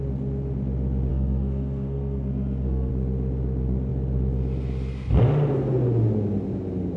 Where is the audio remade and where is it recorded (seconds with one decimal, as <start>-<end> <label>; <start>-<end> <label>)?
0.0-1.1 recorded; 1.1-2.9 remade; 2.9-7.0 recorded